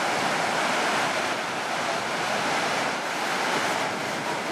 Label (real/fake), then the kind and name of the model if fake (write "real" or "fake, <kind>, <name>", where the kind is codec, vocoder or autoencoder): real